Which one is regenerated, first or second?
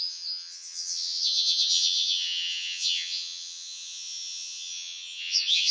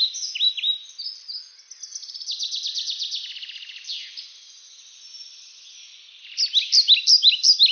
first